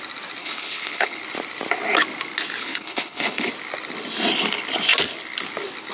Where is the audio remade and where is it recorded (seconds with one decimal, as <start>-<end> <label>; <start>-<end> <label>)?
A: 0.0-0.4 recorded; 0.4-1.2 remade; 1.2-2.6 recorded; 2.6-3.5 remade; 3.5-5.9 recorded